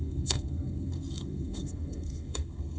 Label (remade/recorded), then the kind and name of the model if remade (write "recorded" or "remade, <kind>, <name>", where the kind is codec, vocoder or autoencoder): remade, codec, SNAC